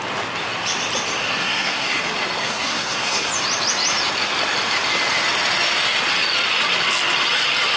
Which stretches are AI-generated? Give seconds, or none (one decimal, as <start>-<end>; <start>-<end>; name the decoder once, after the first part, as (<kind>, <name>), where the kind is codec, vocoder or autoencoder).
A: 1.2-2.0 (codec, SNAC); 2.4-3.3